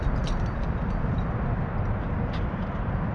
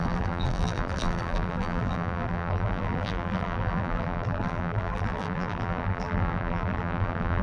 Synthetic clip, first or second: second